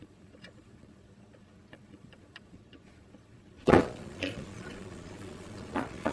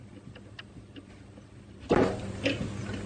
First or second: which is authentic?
second